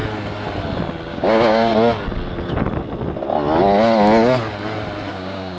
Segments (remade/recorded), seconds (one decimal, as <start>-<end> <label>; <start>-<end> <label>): 0.0-1.1 recorded; 1.1-1.7 remade; 1.7-5.1 recorded; 5.1-5.6 remade